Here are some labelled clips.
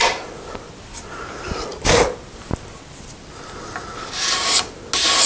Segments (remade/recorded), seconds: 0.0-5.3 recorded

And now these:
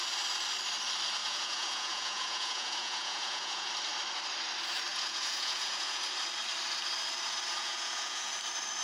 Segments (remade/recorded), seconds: 0.0-1.2 recorded; 1.2-3.7 remade; 3.7-4.9 recorded; 4.9-6.0 remade; 6.0-7.6 recorded; 7.6-8.3 remade; 8.3-8.8 recorded

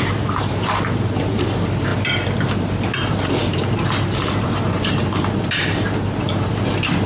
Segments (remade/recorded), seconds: 0.0-1.9 remade; 1.9-2.9 recorded; 2.9-7.1 remade

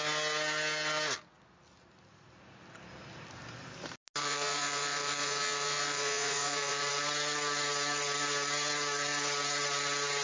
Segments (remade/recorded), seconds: 0.0-4.2 recorded; 4.2-6.9 remade; 6.9-10.2 recorded

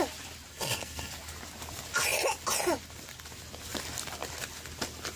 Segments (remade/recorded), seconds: 0.0-0.5 recorded; 0.5-1.1 remade; 1.1-5.2 recorded